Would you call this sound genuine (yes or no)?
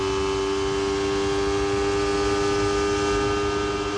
yes